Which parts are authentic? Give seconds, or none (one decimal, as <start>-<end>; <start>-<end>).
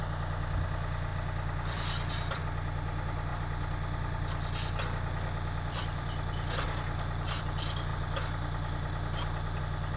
0.0-1.1; 2.4-3.3; 7.4-7.9; 9.6-10.0